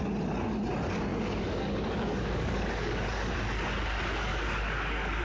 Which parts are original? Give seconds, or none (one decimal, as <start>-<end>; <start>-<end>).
0.0-1.1; 3.3-4.3